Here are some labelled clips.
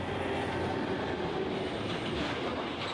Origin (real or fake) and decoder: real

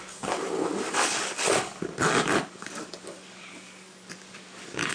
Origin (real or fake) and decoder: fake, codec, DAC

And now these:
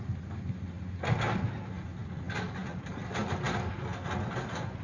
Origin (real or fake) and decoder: real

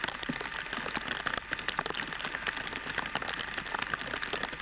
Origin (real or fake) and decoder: real